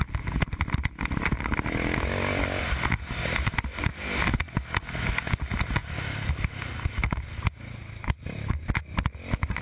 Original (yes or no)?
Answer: yes